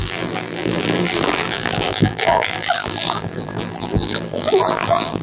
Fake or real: fake